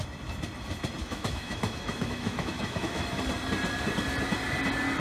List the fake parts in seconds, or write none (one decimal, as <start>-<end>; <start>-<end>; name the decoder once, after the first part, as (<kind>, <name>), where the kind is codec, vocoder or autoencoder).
1.0-3.2 (autoencoder, DAC-VAE)